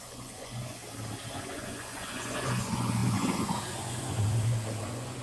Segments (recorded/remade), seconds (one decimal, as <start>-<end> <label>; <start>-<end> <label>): 0.0-0.8 remade; 0.8-1.3 recorded; 1.3-5.2 remade